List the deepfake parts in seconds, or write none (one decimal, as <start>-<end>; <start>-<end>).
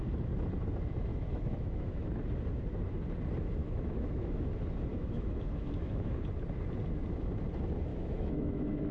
1.1-2.1; 3.6-4.5; 4.9-6.2; 7.9-8.9